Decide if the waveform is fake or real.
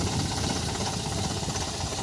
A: real